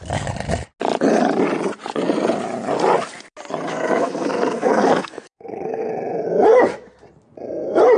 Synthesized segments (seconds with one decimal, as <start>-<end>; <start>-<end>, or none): 3.7-5.9